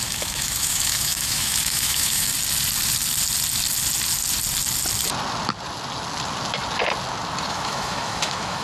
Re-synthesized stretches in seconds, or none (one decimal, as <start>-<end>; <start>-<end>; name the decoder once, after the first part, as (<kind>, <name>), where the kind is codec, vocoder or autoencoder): 0.0-2.3 (autoencoder, DAC-VAE); 7.5-8.6